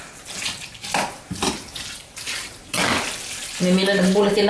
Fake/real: real